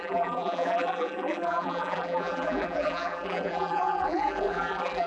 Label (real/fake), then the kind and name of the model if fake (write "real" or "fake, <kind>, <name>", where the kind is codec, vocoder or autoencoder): fake, vocoder, BigVGAN v2